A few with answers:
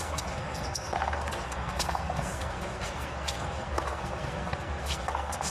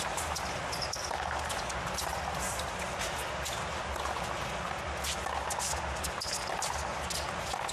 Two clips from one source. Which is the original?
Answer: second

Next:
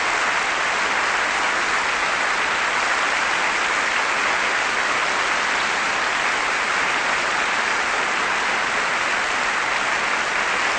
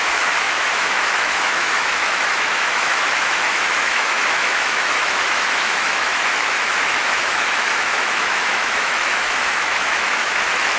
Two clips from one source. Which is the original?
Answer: first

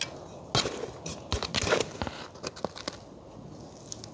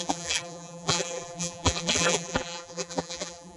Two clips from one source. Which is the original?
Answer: first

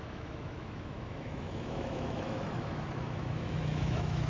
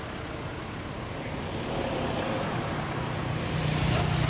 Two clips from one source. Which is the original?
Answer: second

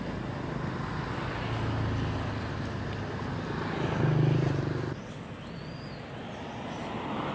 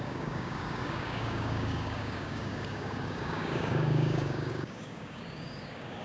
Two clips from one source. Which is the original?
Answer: first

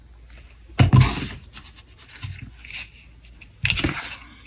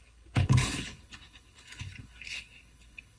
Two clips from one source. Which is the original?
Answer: first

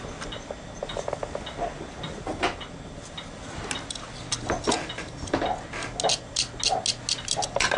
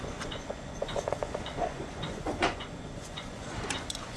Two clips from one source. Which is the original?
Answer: first